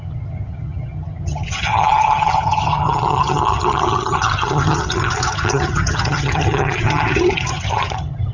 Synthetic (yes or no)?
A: yes